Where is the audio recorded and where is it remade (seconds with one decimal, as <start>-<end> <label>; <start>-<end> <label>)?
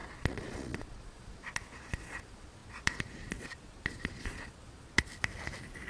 0.0-5.1 remade; 5.1-5.9 recorded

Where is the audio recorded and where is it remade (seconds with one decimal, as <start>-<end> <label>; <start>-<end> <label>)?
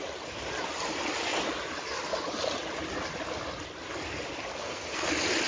0.0-4.5 recorded; 4.5-5.1 remade; 5.1-5.5 recorded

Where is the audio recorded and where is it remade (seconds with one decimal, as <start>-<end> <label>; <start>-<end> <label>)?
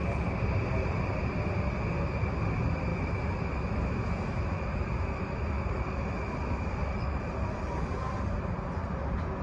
0.0-2.9 recorded; 2.9-7.2 remade; 7.2-9.4 recorded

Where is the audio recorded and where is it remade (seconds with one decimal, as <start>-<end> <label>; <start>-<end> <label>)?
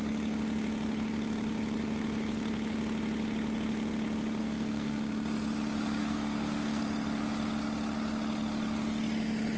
0.0-4.4 recorded; 4.4-5.0 remade; 5.0-6.0 recorded; 6.0-6.8 remade; 6.8-9.6 recorded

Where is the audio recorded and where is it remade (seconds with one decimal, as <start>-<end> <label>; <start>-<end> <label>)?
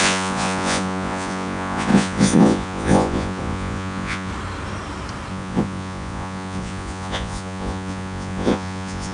0.0-4.3 remade; 4.3-5.3 recorded; 5.3-9.1 remade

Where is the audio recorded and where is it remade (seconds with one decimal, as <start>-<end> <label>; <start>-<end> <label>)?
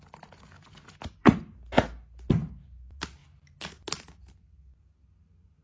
0.0-1.2 recorded; 1.2-2.5 remade; 2.5-5.6 recorded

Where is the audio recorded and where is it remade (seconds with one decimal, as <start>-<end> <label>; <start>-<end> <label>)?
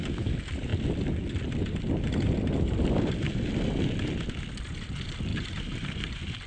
0.0-5.3 recorded; 5.3-6.1 remade; 6.1-6.5 recorded